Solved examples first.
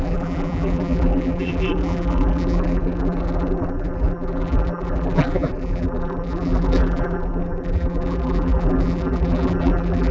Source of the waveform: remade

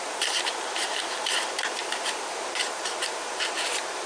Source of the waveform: remade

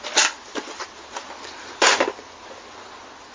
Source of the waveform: recorded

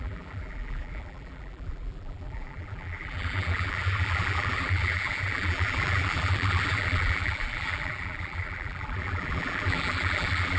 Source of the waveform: remade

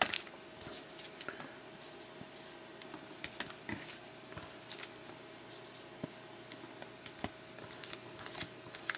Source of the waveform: recorded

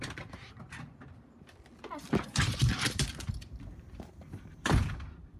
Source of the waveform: remade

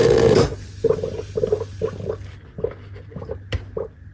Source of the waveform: recorded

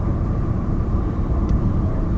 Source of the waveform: remade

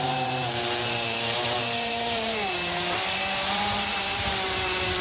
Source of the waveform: remade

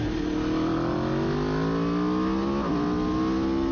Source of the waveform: recorded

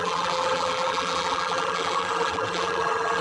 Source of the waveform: remade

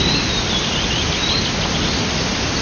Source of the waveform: remade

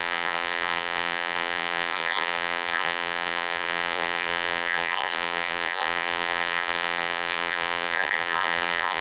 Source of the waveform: remade